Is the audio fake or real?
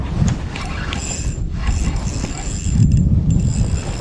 real